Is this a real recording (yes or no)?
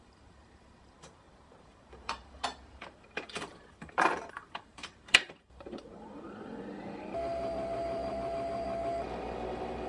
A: no